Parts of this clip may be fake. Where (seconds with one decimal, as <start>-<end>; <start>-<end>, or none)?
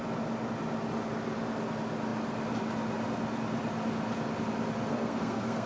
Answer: 4.9-5.7